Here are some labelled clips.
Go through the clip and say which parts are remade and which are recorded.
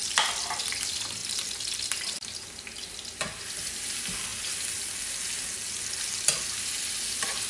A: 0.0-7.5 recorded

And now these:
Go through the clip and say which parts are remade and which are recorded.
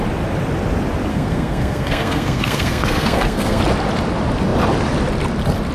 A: 0.0-1.1 recorded; 1.1-3.6 remade; 3.6-5.7 recorded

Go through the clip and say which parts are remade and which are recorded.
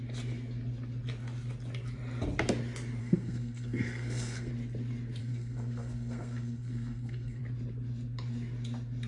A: 0.0-3.0 recorded; 3.0-4.5 remade; 4.5-5.2 recorded; 5.2-7.4 remade; 7.4-9.1 recorded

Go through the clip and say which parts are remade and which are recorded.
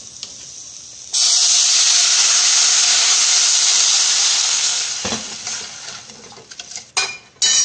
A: 0.0-4.4 recorded; 4.4-4.9 remade; 4.9-7.6 recorded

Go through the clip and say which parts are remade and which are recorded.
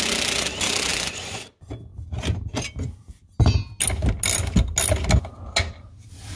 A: 0.0-0.9 recorded; 0.9-1.5 remade; 1.5-6.4 recorded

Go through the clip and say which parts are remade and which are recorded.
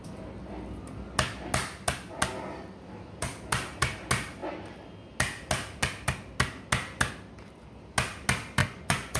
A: 0.0-8.6 recorded; 8.6-9.2 remade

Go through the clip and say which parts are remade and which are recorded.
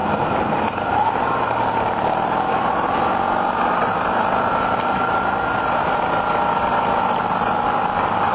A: 0.0-8.3 recorded